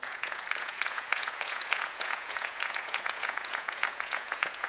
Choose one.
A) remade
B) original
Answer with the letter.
A